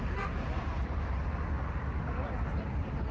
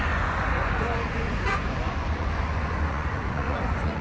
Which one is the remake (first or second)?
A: second